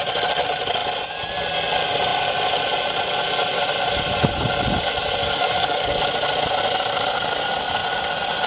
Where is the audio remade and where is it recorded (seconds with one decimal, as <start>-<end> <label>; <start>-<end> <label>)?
0.0-5.2 recorded; 5.2-6.0 remade; 6.0-8.5 recorded